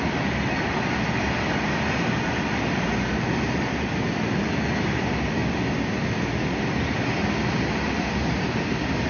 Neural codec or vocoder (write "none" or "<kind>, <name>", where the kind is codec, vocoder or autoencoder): none